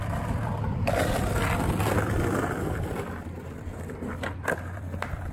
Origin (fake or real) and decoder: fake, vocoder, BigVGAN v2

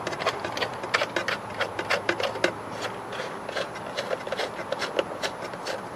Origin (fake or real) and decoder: real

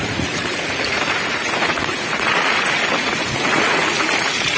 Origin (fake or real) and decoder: fake, vocoder, Vocos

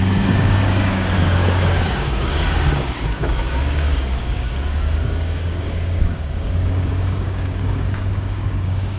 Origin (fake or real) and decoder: fake, codec, DAC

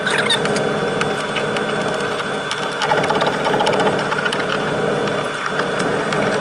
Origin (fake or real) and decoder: real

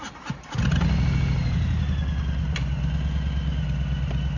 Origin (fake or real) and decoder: real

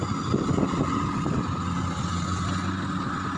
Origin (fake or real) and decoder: real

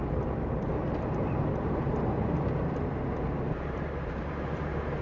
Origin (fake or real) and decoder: fake, vocoder, BigVGAN v2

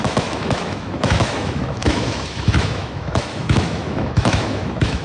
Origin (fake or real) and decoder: fake, autoencoder, DAC-VAE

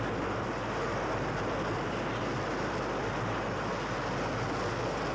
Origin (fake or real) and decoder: real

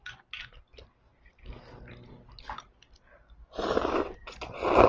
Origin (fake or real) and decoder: real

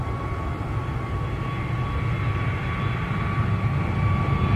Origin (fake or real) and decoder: real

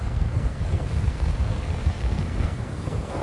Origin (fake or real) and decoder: fake, codec, SNAC